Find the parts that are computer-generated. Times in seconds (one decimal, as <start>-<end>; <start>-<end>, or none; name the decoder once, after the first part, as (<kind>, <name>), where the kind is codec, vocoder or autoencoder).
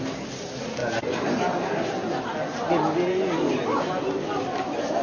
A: none